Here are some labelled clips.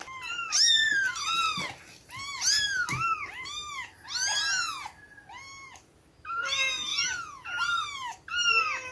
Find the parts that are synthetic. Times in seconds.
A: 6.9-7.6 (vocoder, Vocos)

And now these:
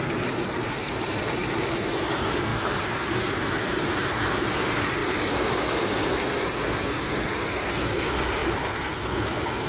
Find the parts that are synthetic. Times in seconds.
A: 0.8-1.9 (vocoder, BigVGAN v2); 2.5-4.2; 5.0-6.0

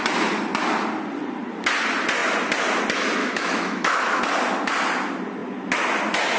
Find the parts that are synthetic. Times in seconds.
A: 3.2-4.2 (autoencoder, DAC-VAE)

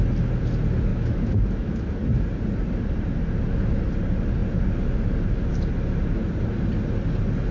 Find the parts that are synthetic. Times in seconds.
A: 0.9-1.9 (autoencoder, DAC-VAE)

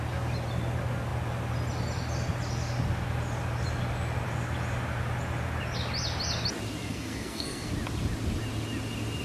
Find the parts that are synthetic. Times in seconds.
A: 6.8-7.7 (codec, SNAC)

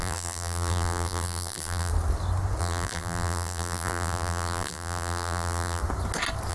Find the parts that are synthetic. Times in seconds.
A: 0.0-1.9 (vocoder, BigVGAN v2); 2.6-5.8

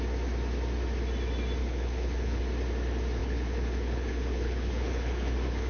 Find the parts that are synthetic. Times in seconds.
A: 1.6-2.4 (codec, HILCodec); 3.2-5.7

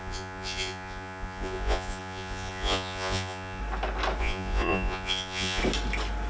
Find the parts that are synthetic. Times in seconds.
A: 0.0-3.6 (vocoder, Vocos); 4.2-5.6